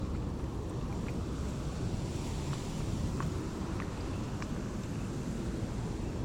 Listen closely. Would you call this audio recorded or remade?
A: recorded